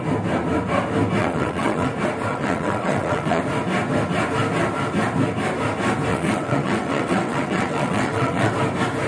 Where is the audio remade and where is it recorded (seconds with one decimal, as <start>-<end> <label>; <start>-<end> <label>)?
0.0-1.2 recorded; 1.2-1.9 remade; 1.9-2.3 recorded; 2.3-3.4 remade; 3.4-6.1 recorded; 6.1-8.5 remade; 8.5-9.1 recorded